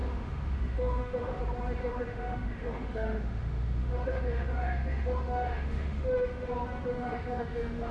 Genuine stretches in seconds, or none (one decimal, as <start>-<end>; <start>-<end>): 1.4-1.8; 6.5-6.9